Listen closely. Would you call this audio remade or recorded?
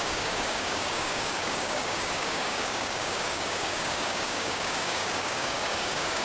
remade